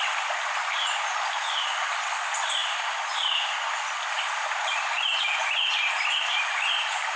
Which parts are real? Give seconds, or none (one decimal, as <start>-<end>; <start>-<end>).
0.0-7.2